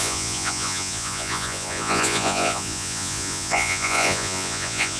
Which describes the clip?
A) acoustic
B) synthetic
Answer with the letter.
B